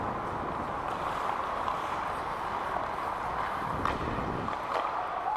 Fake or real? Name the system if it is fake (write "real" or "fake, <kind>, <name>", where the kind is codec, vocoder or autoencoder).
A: real